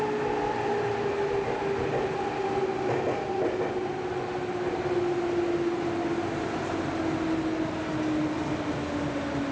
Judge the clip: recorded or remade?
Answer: recorded